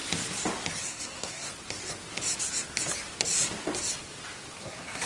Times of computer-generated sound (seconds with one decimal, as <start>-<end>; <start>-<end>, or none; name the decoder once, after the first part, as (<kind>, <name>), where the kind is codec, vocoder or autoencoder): 0.8-1.5 (codec, SNAC); 4.6-5.1